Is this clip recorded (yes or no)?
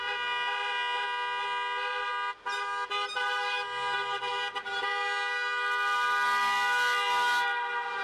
yes